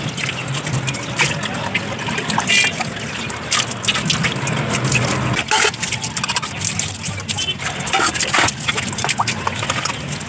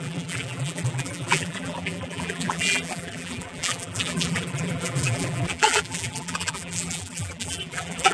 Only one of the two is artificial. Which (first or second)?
second